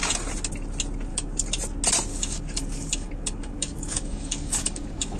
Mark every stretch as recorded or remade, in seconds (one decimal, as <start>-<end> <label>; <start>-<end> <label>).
0.0-1.1 recorded; 1.1-1.6 remade; 1.6-2.1 recorded; 2.1-5.2 remade